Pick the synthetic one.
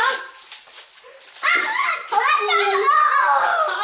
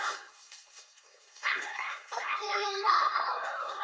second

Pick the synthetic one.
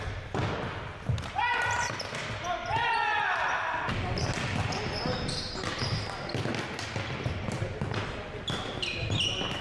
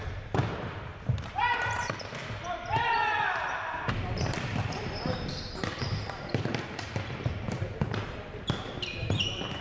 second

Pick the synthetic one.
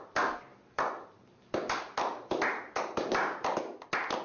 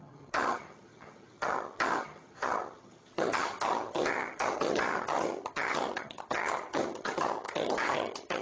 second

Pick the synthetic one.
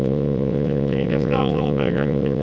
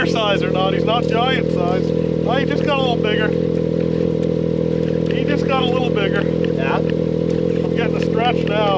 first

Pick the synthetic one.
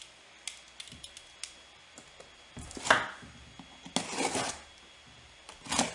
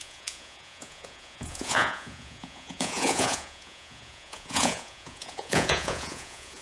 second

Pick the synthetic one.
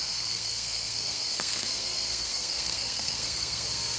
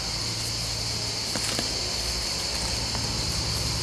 first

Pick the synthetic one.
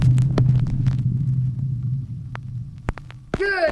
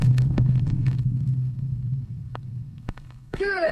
second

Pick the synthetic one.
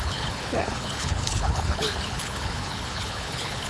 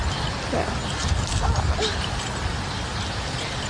first